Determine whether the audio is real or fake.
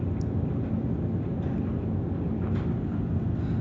real